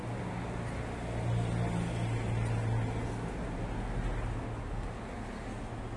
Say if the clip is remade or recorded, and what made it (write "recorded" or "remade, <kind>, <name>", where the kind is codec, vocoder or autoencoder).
recorded